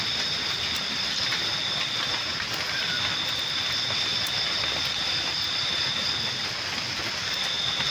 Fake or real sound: real